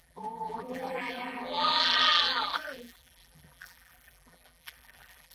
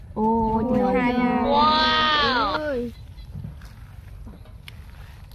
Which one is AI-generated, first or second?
first